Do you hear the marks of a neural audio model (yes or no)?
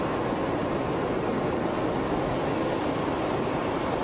no